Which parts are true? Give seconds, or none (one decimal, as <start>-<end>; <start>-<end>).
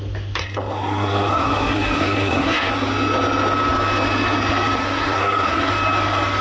0.0-0.4; 2.7-4.8; 5.7-6.4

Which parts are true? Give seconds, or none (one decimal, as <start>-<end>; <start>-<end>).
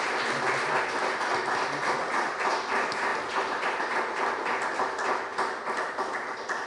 0.0-3.1; 4.0-6.7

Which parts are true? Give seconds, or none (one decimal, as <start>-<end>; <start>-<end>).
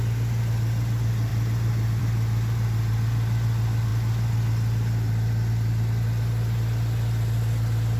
0.0-8.0